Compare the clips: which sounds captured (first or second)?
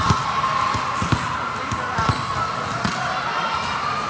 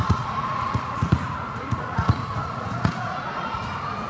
first